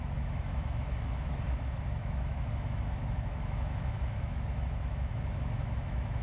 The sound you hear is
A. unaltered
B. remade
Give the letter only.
B